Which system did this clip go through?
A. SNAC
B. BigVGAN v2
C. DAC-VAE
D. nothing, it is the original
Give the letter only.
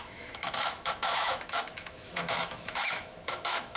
C